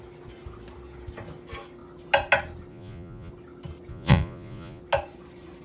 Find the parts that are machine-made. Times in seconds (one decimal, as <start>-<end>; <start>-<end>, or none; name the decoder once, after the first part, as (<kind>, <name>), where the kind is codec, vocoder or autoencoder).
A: 2.7-3.3 (vocoder, Vocos); 3.9-4.8